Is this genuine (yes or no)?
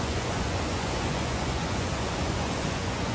no